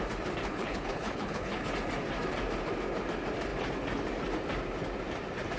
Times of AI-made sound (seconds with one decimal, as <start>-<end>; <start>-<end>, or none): 0.4-1.7